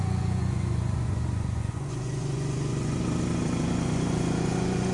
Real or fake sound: fake